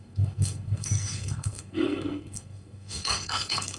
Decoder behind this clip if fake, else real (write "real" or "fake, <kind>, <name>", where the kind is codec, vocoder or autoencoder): fake, codec, SNAC